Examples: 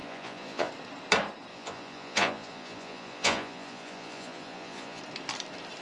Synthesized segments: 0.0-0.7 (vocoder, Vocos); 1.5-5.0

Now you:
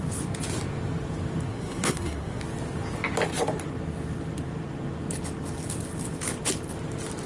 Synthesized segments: 1.5-2.4 (codec, SNAC)

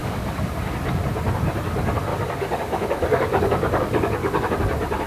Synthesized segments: 0.0-0.7 (codec, DAC); 2.1-4.5

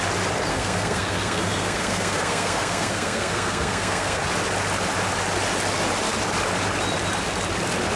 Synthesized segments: 0.5-4.2 (codec, SNAC)

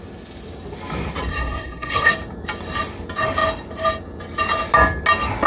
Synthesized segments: 1.3-2.1 (codec, SNAC)